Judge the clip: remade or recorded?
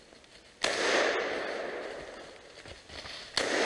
recorded